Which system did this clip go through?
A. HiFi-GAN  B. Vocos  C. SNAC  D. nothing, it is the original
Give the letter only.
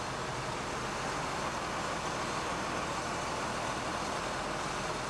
D